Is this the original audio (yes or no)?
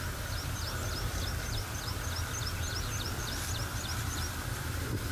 yes